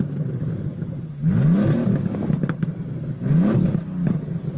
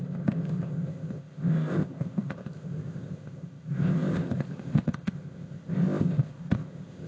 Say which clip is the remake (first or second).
second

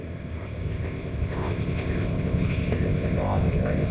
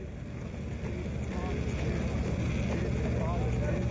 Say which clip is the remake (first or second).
first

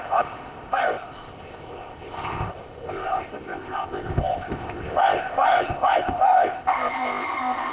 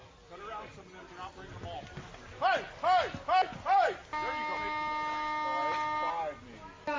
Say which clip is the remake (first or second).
first